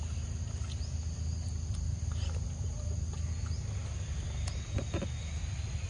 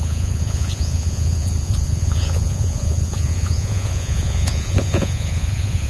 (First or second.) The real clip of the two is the first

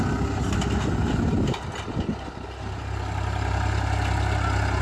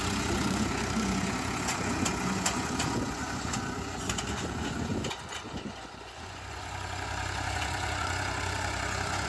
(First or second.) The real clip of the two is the first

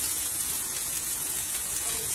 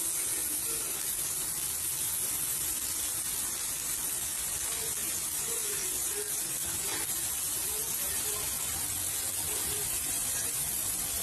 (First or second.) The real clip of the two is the second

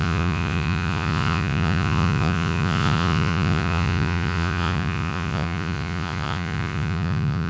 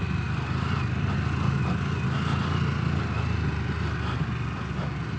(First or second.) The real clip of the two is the second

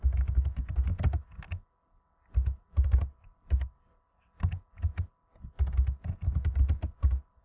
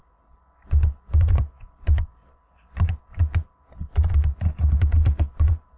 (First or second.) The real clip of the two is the first